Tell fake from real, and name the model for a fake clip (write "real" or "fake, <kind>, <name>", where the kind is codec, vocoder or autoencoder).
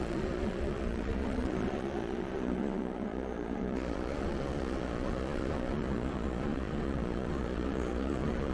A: fake, vocoder, Vocos